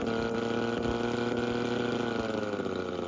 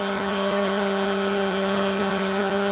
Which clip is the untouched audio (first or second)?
first